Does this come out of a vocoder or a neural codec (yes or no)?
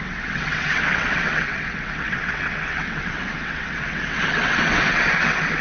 yes